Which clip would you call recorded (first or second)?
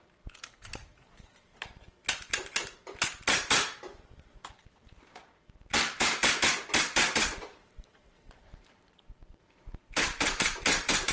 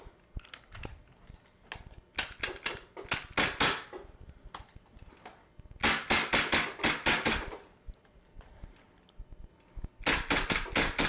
second